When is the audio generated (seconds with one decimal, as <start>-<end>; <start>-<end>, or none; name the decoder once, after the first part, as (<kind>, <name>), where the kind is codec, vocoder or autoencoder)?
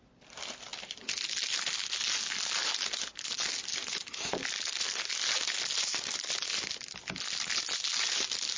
3.7-4.3 (vocoder, BigVGAN v2)